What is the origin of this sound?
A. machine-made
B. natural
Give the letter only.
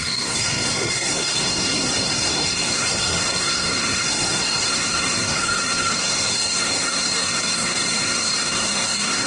A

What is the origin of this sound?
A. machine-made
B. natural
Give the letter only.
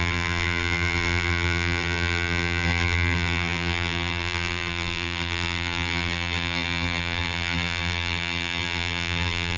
A